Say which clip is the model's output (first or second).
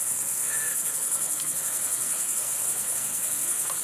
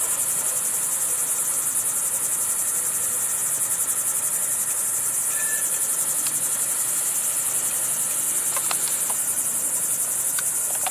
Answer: first